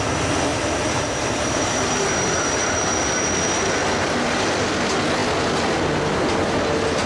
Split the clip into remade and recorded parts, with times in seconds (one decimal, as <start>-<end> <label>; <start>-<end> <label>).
0.0-0.5 recorded; 0.5-2.6 remade; 2.6-7.1 recorded